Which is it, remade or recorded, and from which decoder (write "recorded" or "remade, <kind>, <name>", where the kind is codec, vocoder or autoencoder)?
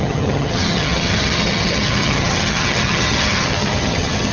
remade, vocoder, HiFi-GAN